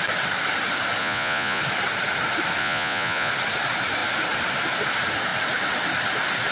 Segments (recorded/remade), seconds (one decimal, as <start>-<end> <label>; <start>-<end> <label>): 0.0-1.0 recorded; 1.0-1.6 remade; 1.6-2.6 recorded; 2.6-3.3 remade; 3.3-6.5 recorded